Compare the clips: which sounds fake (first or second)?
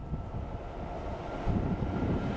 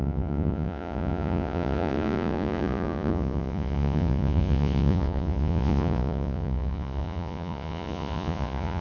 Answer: second